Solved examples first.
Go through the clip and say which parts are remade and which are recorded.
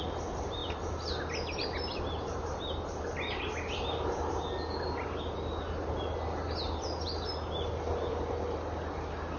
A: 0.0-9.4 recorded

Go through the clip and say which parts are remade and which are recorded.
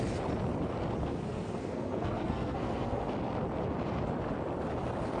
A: 0.0-1.0 recorded; 1.0-3.1 remade; 3.1-5.2 recorded